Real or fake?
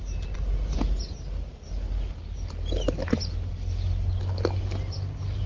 real